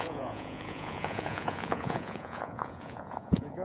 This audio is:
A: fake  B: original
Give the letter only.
A